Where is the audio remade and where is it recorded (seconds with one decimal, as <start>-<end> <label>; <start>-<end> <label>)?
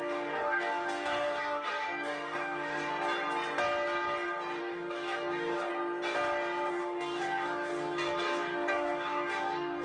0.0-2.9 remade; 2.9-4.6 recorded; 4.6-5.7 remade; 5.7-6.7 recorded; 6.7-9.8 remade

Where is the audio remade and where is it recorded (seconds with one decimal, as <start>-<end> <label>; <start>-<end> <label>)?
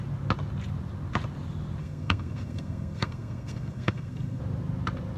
0.0-1.8 recorded; 1.8-4.4 remade; 4.4-5.2 recorded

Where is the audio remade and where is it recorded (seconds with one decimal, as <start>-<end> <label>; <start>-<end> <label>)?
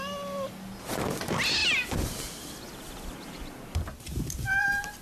0.0-5.0 recorded